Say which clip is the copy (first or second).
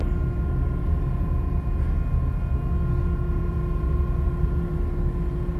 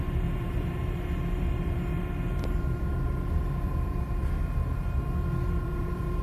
second